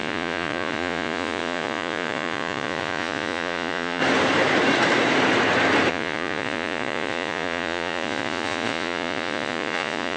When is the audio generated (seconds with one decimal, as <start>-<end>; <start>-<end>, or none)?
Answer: 0.0-4.0; 5.9-10.2